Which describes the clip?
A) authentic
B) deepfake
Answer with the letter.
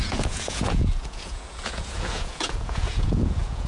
B